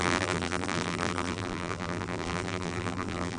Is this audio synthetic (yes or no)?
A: yes